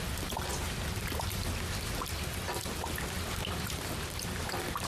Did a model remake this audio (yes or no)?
no